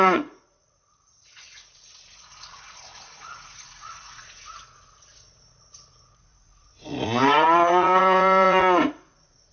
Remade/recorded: remade